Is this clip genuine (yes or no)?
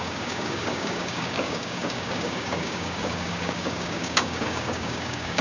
no